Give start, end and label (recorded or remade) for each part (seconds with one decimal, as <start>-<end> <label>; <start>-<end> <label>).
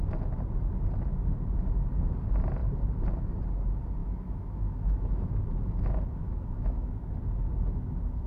0.0-4.0 recorded; 4.0-5.4 remade; 5.4-6.2 recorded; 6.2-6.9 remade; 6.9-8.3 recorded